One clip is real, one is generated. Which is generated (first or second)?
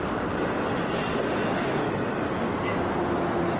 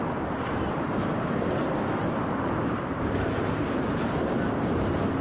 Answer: second